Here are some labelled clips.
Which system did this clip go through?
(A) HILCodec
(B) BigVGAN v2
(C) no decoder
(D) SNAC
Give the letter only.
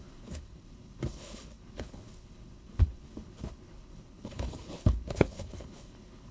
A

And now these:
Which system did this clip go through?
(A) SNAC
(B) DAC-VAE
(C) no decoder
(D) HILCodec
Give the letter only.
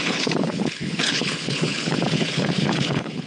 D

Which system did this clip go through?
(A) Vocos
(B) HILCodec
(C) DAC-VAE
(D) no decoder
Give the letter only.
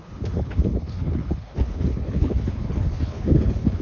B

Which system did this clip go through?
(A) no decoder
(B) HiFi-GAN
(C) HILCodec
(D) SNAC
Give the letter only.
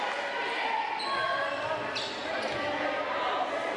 A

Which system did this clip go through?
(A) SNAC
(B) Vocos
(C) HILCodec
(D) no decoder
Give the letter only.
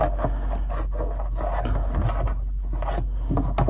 D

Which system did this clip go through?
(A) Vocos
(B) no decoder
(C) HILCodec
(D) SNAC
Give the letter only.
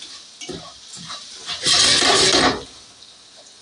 B